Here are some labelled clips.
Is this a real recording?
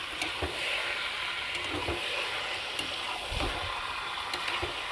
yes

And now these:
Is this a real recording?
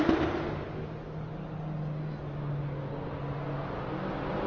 yes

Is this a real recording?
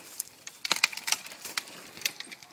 no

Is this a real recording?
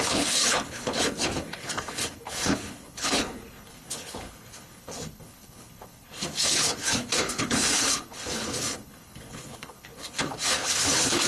no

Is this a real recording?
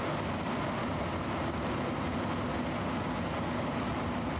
yes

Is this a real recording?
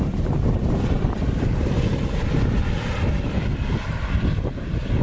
yes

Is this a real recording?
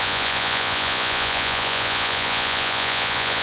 no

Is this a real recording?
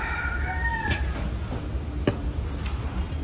yes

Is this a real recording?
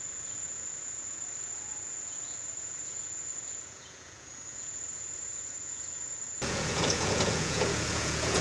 no